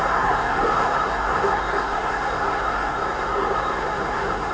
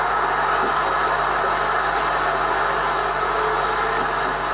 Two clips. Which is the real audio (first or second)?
second